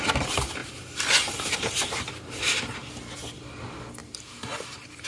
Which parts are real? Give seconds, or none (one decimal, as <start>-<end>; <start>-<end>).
0.0-0.6; 2.9-4.0